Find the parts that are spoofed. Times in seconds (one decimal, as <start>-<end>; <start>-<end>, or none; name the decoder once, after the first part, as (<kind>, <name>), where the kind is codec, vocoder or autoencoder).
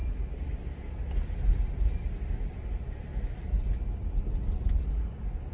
2.3-3.1 (vocoder, BigVGAN v2)